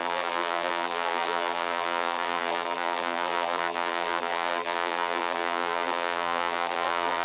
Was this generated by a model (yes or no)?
yes